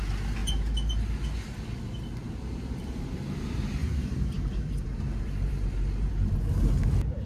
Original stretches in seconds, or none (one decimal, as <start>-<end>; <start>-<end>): 0.0-3.8; 6.1-7.3